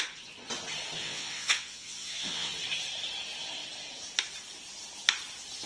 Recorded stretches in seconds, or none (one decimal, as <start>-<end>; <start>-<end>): 0.0-1.0; 2.5-5.7